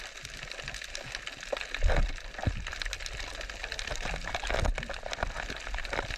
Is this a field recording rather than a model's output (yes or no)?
yes